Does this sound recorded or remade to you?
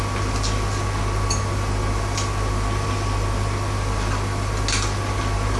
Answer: recorded